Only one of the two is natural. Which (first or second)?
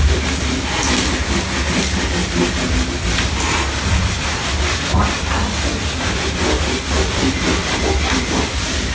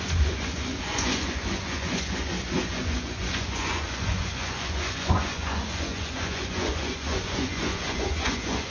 first